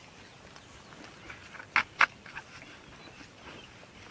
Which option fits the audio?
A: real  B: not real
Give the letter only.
A